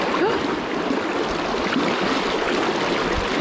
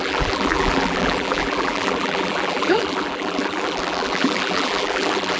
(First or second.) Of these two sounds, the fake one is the second